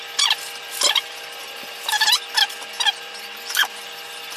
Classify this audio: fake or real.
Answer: real